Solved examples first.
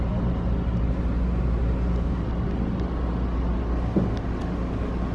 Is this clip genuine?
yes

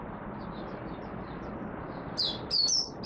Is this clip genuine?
yes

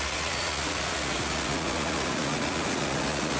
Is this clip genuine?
no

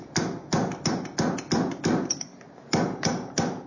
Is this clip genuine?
yes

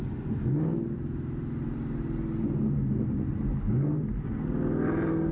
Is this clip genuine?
yes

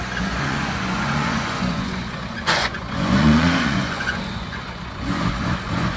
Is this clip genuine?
no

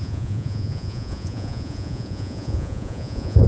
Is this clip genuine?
no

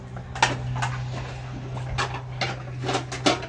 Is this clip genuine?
yes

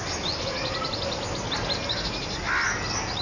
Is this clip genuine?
yes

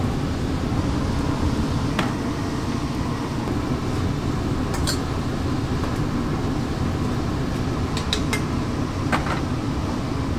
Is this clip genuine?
yes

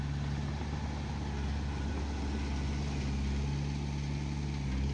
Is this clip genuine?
yes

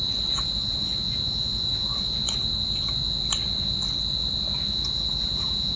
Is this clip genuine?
yes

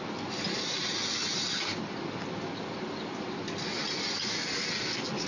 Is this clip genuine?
yes